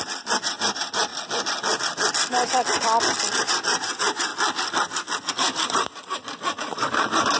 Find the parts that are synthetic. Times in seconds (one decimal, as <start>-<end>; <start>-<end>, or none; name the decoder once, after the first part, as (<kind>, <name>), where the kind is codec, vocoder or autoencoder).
0.0-1.1 (vocoder, BigVGAN v2); 3.3-4.3; 5.3-7.4

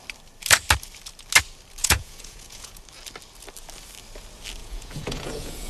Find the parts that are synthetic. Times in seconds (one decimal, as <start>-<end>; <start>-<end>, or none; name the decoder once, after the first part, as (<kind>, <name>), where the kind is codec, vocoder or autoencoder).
1.8-2.8 (vocoder, Vocos); 4.6-5.7

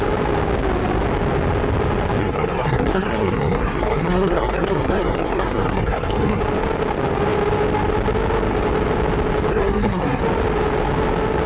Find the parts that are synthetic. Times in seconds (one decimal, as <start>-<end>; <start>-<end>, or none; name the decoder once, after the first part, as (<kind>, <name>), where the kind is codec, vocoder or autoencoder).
2.2-6.4 (codec, SNAC); 9.5-10.2

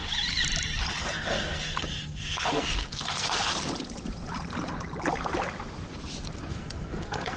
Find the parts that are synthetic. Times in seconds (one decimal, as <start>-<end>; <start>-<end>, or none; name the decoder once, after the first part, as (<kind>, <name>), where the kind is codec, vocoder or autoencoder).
1.0-3.5 (codec, SNAC); 6.5-7.4

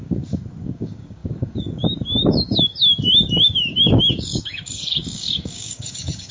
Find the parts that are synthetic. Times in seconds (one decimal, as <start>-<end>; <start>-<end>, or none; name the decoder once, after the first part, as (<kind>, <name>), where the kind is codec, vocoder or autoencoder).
0.0-6.3 (codec, DAC)

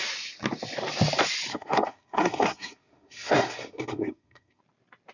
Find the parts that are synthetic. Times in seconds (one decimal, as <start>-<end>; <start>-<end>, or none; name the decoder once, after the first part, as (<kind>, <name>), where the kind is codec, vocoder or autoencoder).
1.5-4.6 (codec, SNAC)

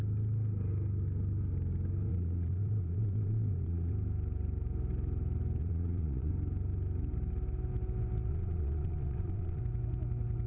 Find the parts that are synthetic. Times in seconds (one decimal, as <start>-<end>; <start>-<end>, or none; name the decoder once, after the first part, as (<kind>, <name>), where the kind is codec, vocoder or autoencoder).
2.1-3.9 (vocoder, Vocos); 5.6-6.3; 8.3-9.6

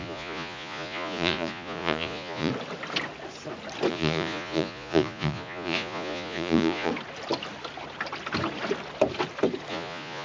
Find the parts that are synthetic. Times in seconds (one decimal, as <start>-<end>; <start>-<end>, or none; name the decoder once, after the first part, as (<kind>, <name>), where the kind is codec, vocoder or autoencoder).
0.0-2.5 (vocoder, Vocos); 3.9-6.9; 9.7-10.2